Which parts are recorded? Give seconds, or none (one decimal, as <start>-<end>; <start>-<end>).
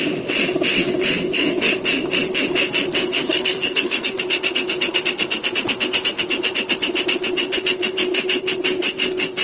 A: 0.0-0.7; 1.6-3.0; 4.2-9.4